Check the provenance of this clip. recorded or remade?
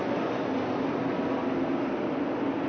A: recorded